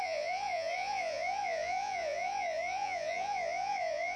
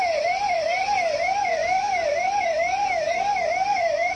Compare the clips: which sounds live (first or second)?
second